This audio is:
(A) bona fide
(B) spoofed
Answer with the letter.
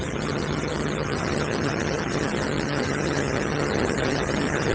B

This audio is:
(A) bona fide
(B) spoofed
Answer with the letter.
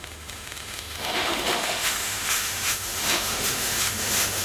B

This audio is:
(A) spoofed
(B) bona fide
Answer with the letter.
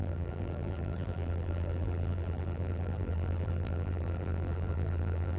A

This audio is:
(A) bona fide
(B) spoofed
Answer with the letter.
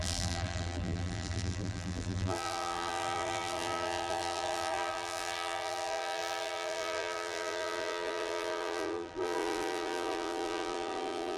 B